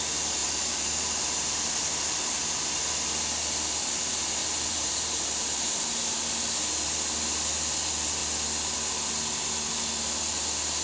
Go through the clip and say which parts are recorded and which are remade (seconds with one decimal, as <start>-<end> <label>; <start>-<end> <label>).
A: 0.0-0.4 recorded; 0.4-1.8 remade; 1.8-4.4 recorded; 4.4-5.8 remade; 5.8-10.8 recorded